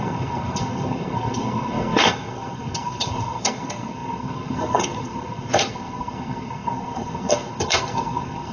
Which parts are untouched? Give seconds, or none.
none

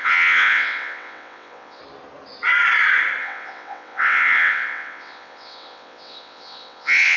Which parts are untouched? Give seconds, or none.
1.8-3.2